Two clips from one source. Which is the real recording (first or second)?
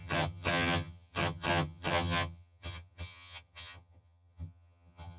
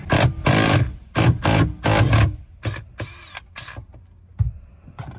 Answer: second